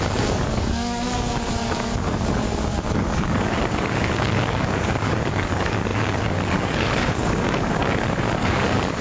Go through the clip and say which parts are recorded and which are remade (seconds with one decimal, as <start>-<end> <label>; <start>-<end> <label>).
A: 0.0-9.0 remade

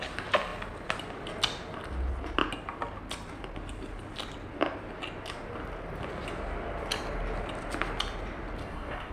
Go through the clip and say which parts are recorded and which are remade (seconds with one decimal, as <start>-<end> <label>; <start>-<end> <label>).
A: 0.0-8.6 recorded; 8.6-9.1 remade

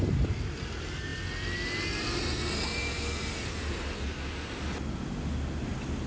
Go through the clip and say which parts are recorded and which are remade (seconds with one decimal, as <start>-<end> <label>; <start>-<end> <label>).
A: 0.0-6.1 recorded

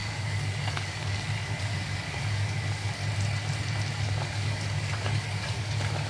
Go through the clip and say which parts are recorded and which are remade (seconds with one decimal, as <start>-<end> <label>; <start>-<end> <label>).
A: 0.0-3.0 remade; 3.0-4.0 recorded; 4.0-6.1 remade

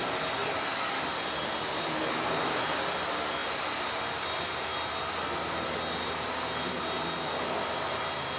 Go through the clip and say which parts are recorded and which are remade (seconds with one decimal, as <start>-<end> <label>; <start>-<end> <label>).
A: 0.0-0.4 recorded; 0.4-1.0 remade; 1.0-8.4 recorded

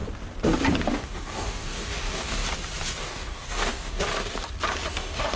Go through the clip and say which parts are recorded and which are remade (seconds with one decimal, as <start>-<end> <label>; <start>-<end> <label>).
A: 0.0-0.9 recorded; 0.9-2.4 remade; 2.4-3.0 recorded; 3.0-4.1 remade; 4.1-4.9 recorded; 4.9-5.4 remade

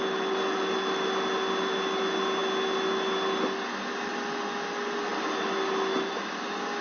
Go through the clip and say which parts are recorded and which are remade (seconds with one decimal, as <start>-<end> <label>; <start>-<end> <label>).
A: 0.0-6.8 recorded